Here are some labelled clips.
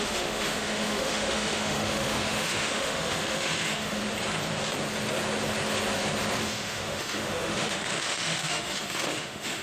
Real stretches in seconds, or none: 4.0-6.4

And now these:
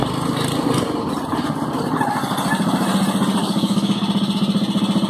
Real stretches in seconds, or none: 0.0-3.4; 4.0-5.1

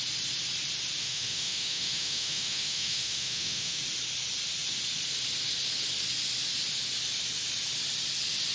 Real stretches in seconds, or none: 0.0-1.0; 3.8-8.5

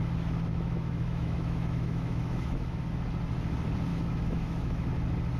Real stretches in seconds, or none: 0.0-0.5; 2.8-3.9; 4.9-5.4

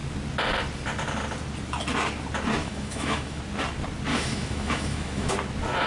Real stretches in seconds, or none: 0.0-2.6; 3.4-4.1; 5.3-5.9

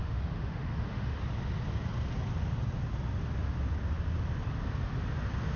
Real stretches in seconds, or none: 1.2-5.6

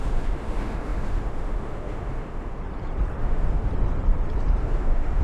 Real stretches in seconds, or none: 2.6-3.2; 3.7-4.6